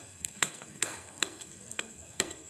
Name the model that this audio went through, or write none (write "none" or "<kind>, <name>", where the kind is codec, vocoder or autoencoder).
codec, SNAC